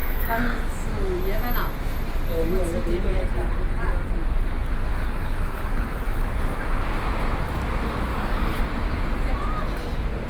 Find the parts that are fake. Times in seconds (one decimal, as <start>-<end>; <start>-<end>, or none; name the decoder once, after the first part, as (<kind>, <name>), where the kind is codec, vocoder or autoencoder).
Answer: 0.0-0.7 (codec, DAC); 4.9-6.3; 8.1-8.6